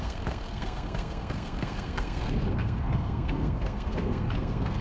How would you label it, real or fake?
fake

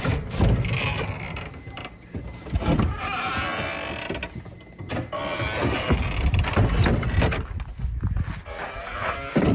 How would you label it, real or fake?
real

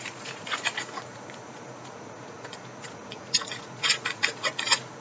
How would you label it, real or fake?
fake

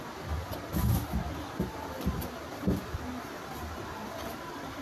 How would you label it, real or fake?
real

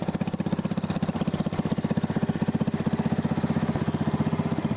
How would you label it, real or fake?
real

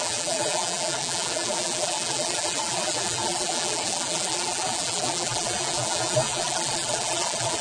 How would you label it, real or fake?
fake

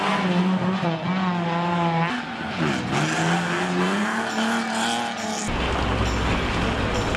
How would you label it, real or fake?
real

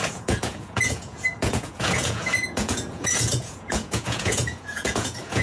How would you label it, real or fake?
fake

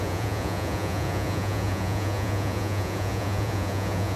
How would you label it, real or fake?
fake